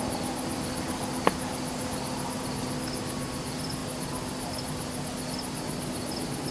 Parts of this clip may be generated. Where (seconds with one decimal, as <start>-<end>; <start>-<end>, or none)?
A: none